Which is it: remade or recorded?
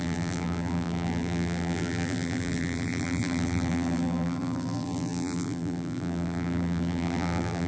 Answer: remade